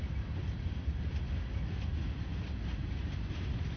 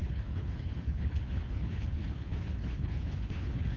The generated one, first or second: second